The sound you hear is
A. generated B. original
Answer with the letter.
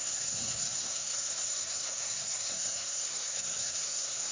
A